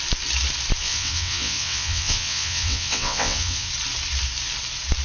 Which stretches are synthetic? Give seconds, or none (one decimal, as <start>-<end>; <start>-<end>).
0.8-3.7